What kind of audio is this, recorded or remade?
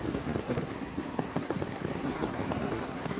remade